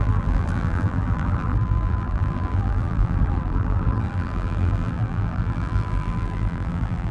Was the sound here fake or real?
fake